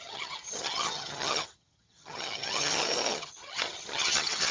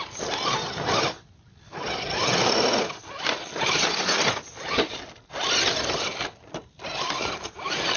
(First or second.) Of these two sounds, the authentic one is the second